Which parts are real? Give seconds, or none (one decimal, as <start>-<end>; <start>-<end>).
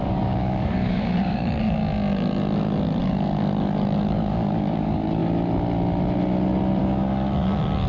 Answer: 1.8-3.0; 5.2-6.8